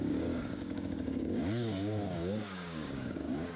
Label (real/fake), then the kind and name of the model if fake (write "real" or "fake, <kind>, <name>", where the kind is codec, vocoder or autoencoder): fake, codec, DAC